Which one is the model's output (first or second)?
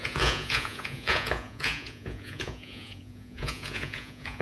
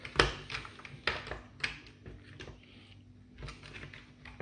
first